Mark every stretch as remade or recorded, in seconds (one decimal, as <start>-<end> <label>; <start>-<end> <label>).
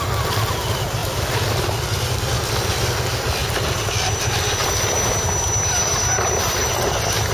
0.0-1.0 recorded; 1.0-2.5 remade; 2.5-3.4 recorded; 3.4-3.9 remade; 3.9-4.6 recorded; 4.6-6.6 remade; 6.6-7.3 recorded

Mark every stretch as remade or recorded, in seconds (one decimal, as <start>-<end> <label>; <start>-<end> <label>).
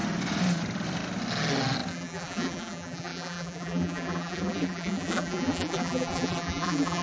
0.0-1.9 recorded; 1.9-7.0 remade